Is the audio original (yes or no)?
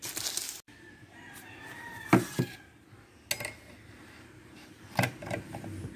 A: yes